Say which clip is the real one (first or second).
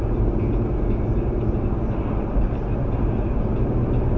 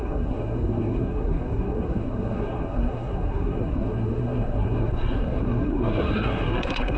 first